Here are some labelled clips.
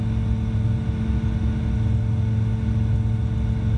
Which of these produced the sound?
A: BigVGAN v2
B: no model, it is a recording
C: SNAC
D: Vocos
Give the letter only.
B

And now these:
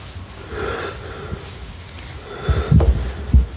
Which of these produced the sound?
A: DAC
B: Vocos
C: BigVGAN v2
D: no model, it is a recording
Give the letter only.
D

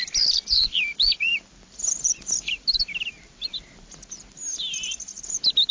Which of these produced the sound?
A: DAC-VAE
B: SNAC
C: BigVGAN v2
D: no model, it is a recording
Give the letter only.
C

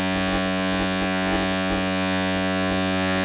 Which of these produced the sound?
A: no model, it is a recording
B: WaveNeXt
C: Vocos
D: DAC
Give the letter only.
C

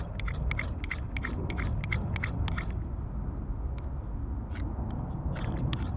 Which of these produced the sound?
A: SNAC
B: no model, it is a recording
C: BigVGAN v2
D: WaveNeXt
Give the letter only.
B